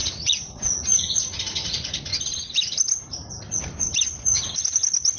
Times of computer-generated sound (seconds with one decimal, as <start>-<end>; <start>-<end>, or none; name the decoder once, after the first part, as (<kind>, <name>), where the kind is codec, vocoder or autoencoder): 0.0-2.1 (vocoder, Vocos)